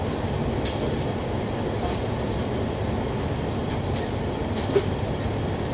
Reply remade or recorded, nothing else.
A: recorded